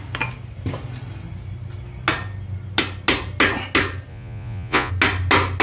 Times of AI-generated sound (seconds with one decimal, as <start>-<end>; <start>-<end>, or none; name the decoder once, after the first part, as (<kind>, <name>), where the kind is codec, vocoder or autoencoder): 4.1-4.9 (vocoder, Vocos)